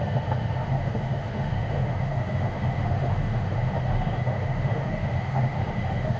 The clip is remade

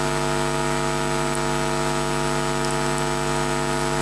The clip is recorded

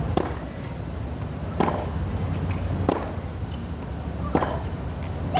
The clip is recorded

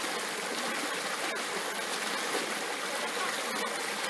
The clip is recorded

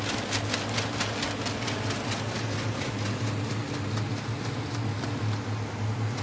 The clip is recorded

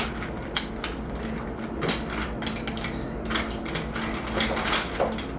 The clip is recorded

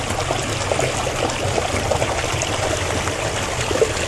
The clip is recorded